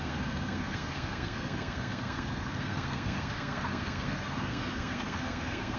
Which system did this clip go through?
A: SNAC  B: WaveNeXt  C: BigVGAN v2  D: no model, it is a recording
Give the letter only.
A